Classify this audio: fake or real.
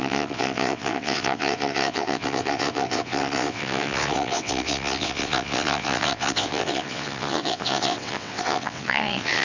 fake